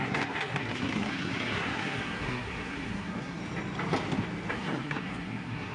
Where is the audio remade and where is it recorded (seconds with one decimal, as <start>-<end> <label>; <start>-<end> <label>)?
0.0-3.4 remade; 3.4-4.5 recorded; 4.5-5.7 remade